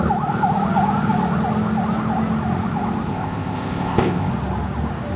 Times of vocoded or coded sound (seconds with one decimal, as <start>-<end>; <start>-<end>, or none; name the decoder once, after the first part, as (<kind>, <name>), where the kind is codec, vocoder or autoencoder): 3.1-4.3 (codec, ZipCodec)